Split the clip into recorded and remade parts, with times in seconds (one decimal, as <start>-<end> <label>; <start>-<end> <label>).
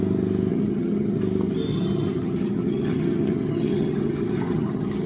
0.0-0.5 recorded; 0.5-1.2 remade; 1.2-1.7 recorded; 1.7-5.1 remade